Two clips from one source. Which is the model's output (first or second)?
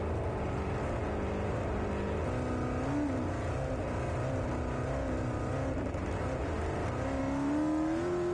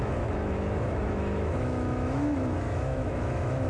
second